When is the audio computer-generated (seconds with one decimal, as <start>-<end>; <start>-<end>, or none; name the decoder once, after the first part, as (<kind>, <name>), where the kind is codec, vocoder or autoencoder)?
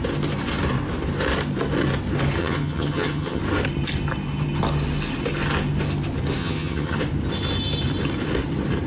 2.4-3.4 (vocoder, HiFi-GAN); 6.4-7.0